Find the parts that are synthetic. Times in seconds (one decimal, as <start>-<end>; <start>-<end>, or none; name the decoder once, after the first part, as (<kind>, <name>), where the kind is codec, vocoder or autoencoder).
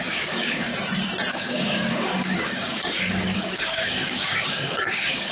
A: 0.0-0.7 (codec, DAC); 1.3-5.3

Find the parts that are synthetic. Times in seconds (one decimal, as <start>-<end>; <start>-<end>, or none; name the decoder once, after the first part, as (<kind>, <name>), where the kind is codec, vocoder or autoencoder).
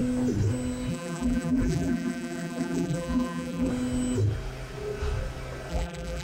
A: 0.9-3.7 (vocoder, BigVGAN v2); 5.7-6.2